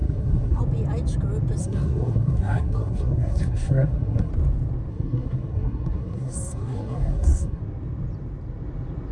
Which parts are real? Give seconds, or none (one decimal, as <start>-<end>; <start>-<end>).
0.6-1.6; 4.3-4.9; 7.6-9.1